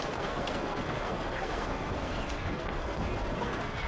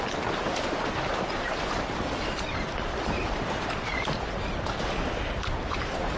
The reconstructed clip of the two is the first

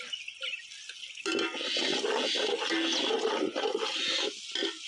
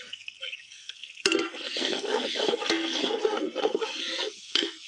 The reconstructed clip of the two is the second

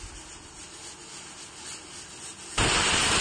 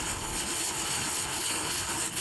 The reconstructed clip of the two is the second